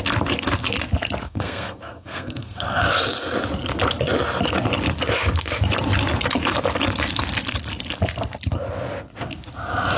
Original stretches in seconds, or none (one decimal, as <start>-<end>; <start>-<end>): 0.0-1.2; 2.8-10.0